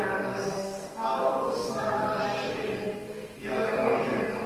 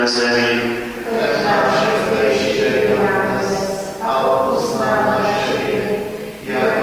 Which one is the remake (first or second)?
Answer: first